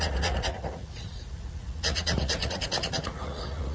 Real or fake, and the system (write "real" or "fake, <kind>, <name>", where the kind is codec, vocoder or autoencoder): fake, vocoder, Vocos